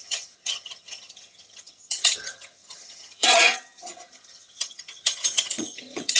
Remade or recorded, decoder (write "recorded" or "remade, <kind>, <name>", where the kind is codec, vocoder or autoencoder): remade, vocoder, HiFi-GAN